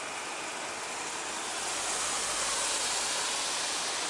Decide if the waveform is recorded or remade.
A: recorded